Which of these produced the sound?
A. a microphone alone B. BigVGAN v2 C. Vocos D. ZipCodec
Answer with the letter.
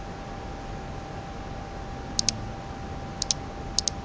A